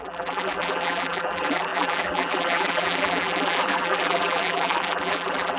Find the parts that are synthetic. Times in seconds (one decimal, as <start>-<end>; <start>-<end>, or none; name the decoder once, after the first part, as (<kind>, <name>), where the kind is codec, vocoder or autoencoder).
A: 0.0-5.6 (vocoder, BigVGAN v2)